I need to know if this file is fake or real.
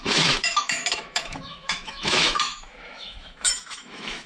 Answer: fake